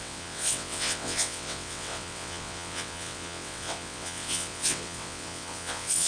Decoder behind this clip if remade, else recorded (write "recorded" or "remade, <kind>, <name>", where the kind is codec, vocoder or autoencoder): remade, vocoder, WaveNeXt